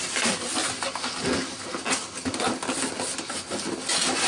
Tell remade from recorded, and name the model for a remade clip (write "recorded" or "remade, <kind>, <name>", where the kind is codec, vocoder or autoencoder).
recorded